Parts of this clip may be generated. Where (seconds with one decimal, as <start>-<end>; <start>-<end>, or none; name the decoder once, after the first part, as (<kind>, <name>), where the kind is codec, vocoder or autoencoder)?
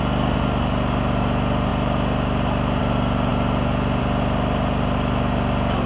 none